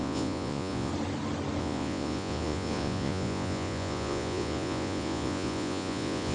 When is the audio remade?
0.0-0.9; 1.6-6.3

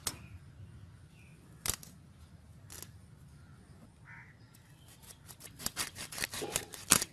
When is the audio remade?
none

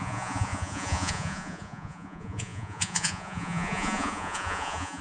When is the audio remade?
0.0-5.0

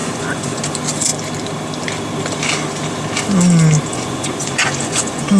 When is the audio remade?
0.0-0.7; 3.9-5.4

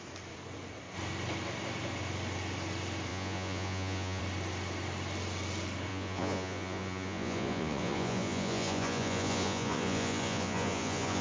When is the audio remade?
3.1-4.2; 5.9-11.2

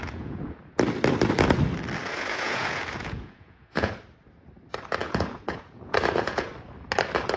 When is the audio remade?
0.0-0.6; 2.0-4.0; 5.0-6.5